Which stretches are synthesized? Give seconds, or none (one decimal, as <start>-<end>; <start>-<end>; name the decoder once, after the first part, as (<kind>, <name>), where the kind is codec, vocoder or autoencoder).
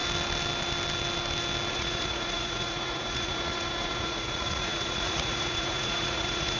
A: 1.7-6.6 (vocoder, Vocos)